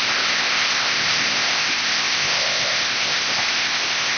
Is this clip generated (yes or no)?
yes